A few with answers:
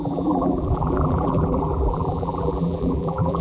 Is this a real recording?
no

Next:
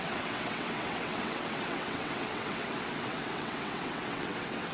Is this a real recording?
no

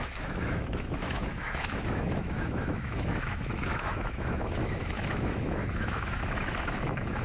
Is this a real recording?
no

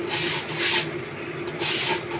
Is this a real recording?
yes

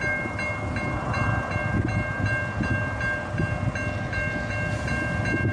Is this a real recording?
yes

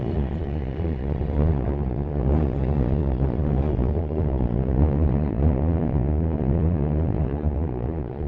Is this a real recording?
no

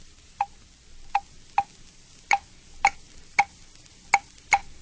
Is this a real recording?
yes